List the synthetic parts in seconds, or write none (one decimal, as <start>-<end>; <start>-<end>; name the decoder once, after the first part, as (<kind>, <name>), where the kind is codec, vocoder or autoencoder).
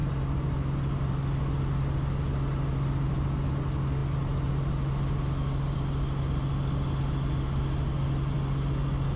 none